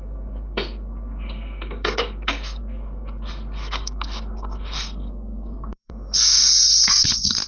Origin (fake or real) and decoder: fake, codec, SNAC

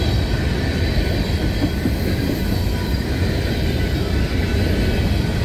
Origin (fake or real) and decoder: real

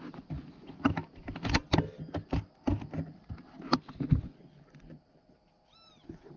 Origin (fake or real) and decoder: real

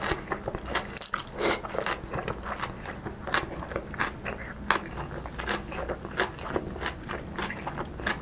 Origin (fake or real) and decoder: real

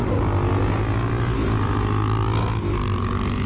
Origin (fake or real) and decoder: real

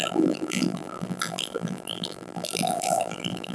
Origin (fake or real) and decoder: fake, vocoder, BigVGAN v2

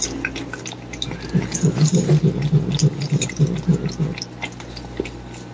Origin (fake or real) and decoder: real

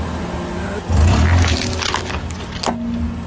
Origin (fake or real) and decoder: real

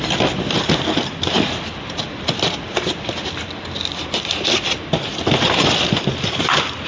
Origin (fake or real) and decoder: real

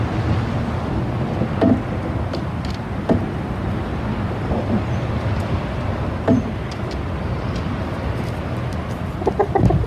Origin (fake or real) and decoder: real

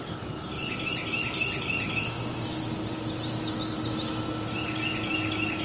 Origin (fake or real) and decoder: real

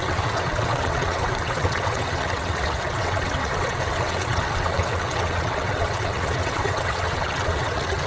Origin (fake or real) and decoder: fake, vocoder, WaveNeXt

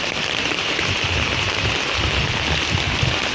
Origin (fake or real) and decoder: real